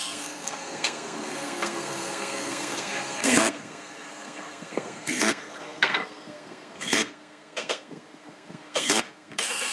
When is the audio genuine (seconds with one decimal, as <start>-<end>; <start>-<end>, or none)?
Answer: none